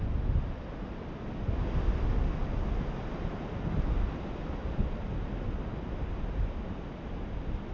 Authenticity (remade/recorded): recorded